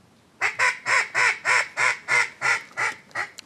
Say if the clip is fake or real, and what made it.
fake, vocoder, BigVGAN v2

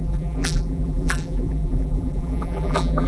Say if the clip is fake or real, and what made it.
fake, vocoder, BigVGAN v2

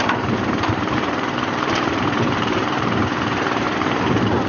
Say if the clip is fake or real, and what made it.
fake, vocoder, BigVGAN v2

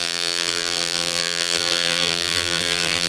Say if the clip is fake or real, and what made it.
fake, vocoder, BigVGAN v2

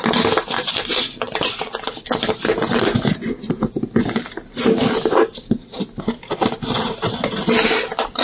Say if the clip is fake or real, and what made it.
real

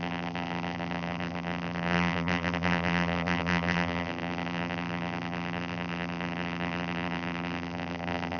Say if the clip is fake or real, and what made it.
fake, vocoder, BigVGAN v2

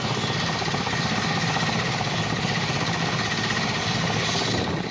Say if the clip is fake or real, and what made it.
real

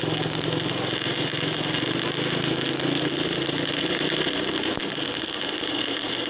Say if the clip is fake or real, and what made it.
real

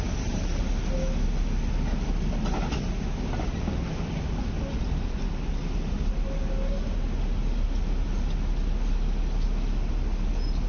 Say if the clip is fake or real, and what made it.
real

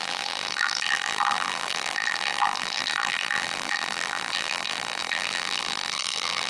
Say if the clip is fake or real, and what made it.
fake, vocoder, BigVGAN v2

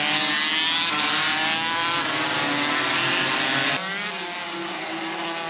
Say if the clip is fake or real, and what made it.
real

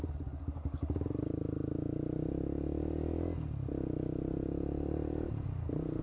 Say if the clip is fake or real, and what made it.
real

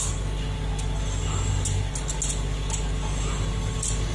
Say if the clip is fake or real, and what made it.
real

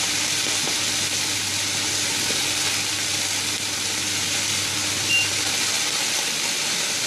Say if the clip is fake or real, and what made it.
real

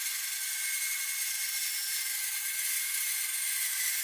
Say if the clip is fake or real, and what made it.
real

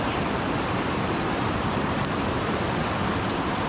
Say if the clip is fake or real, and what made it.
fake, vocoder, BigVGAN v2